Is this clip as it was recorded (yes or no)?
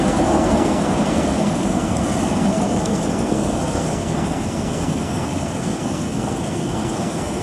no